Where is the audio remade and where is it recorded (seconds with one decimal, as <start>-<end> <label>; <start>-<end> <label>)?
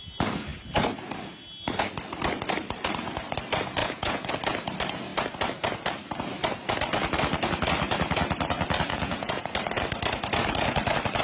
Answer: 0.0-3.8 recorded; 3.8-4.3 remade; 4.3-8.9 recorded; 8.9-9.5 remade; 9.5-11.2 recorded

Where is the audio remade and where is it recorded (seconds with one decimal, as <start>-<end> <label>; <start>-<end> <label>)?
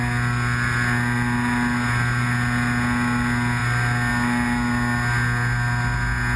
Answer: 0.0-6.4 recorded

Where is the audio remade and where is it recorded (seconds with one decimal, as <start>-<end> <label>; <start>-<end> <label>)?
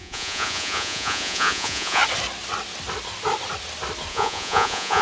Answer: 0.0-2.0 remade; 2.0-4.1 recorded; 4.1-5.0 remade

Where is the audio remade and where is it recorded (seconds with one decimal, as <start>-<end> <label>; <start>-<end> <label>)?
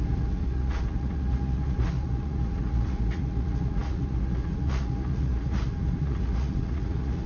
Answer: 0.0-7.3 remade